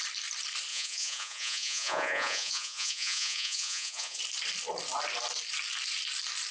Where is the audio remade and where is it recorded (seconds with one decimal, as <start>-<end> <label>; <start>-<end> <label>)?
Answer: 0.0-0.7 recorded; 0.7-4.2 remade; 4.2-6.5 recorded